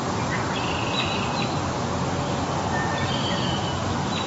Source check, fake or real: real